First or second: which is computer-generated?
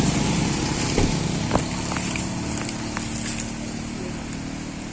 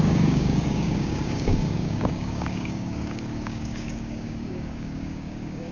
second